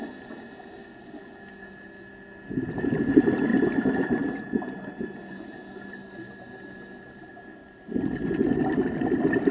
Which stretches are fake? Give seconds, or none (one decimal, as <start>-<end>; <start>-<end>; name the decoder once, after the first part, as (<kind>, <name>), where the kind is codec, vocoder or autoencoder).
3.5-5.3 (vocoder, BigVGAN v2)